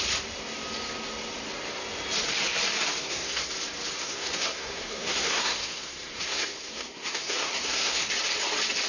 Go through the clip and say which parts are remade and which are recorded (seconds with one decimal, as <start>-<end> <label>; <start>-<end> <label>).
0.0-3.0 recorded; 3.0-3.5 remade; 3.5-4.0 recorded; 4.0-8.1 remade; 8.1-8.9 recorded